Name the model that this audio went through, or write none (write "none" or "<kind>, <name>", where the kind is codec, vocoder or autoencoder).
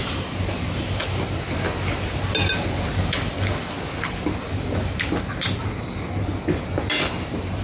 none